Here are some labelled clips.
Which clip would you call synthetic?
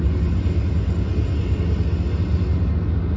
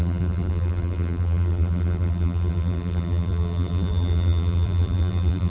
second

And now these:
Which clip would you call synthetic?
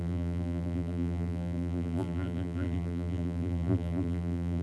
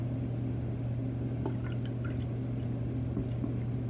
first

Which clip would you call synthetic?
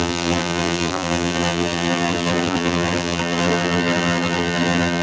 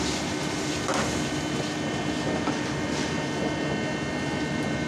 first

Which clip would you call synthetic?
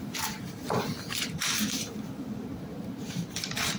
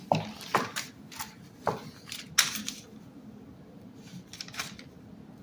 first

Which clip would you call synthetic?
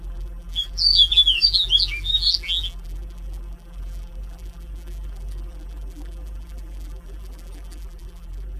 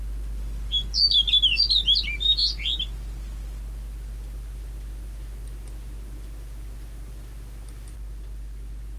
first